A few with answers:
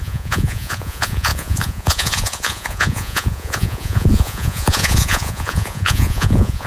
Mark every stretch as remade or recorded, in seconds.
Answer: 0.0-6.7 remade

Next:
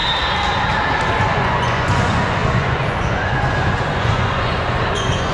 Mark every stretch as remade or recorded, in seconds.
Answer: 0.0-1.1 recorded; 1.1-5.3 remade

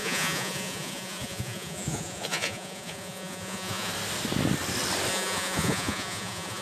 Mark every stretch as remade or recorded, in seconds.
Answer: 0.0-3.9 remade; 3.9-5.1 recorded; 5.1-6.6 remade

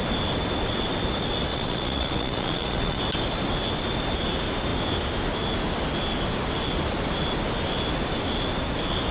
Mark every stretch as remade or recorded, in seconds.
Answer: 0.0-1.5 recorded; 1.5-3.0 remade; 3.0-9.1 recorded